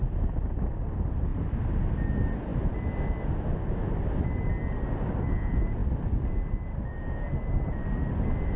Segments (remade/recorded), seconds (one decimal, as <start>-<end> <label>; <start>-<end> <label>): 0.0-8.6 recorded